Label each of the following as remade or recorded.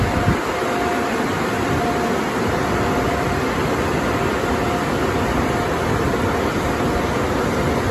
recorded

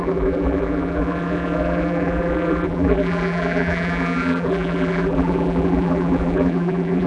remade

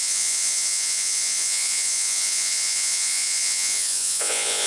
remade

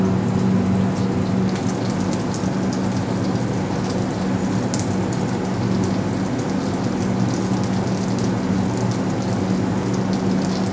recorded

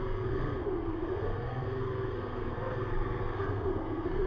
remade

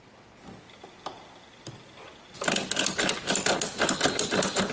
recorded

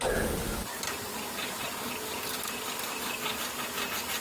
recorded